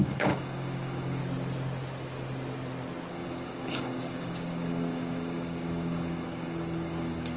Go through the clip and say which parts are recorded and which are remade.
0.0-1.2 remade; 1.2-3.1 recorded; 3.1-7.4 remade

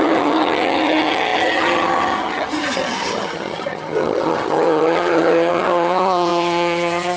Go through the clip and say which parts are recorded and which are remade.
0.0-7.2 remade

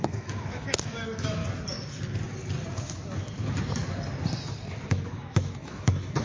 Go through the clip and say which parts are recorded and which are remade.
0.0-1.4 remade; 1.4-4.9 recorded; 4.9-6.2 remade

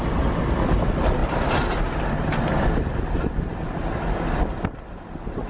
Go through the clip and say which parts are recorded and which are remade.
0.0-5.5 recorded

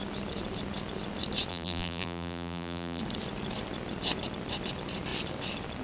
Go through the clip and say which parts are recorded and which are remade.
0.0-1.5 recorded; 1.5-3.0 remade; 3.0-5.8 recorded

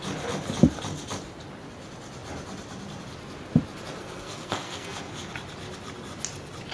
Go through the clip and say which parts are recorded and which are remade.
0.0-4.0 recorded; 4.0-5.3 remade; 5.3-6.7 recorded

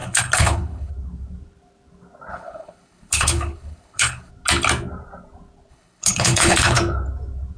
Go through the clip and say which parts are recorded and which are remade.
0.0-0.9 remade; 0.9-2.3 recorded; 2.3-4.3 remade; 4.3-5.7 recorded; 5.7-6.8 remade; 6.8-7.6 recorded